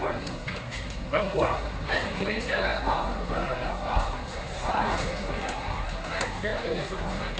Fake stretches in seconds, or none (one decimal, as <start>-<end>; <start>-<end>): 0.0-7.4

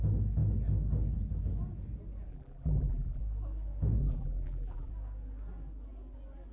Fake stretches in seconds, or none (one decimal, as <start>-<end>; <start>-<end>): 2.3-3.2; 4.0-4.9

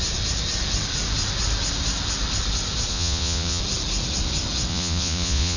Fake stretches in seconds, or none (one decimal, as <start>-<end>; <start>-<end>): 2.9-3.6; 4.7-5.6